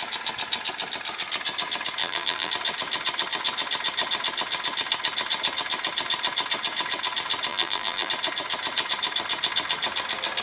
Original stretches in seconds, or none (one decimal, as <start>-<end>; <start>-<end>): 0.0-2.0; 2.5-7.5; 8.1-10.4